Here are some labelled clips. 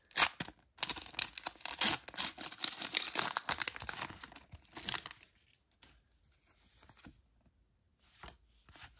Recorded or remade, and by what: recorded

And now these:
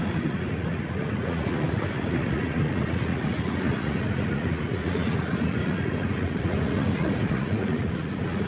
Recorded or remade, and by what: remade, vocoder, Vocos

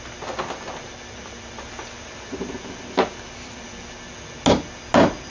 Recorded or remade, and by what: recorded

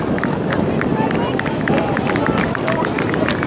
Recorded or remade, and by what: recorded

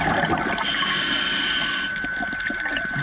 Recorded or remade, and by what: recorded